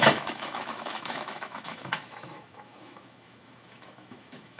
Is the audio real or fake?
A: fake